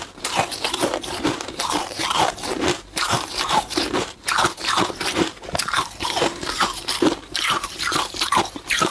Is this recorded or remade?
remade